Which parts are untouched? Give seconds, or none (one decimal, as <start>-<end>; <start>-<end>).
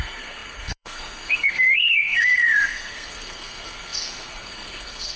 none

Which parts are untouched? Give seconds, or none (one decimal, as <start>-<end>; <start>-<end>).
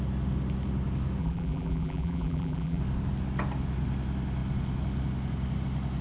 0.0-1.2; 2.8-6.0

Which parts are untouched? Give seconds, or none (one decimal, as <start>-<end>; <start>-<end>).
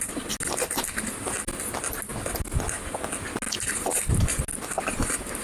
0.0-5.4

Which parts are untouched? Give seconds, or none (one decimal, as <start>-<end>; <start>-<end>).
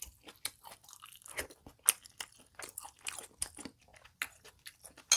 0.0-5.2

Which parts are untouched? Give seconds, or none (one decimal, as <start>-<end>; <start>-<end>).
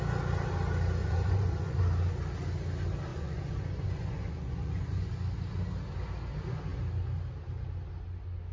0.0-1.0; 1.8-3.1; 5.1-8.5